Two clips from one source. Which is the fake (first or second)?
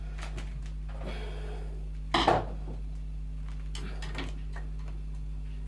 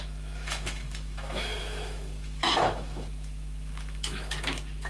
second